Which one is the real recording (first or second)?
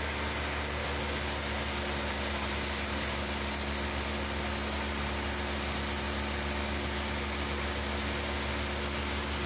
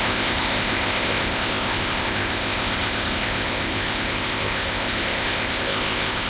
first